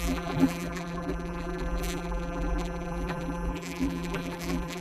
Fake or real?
fake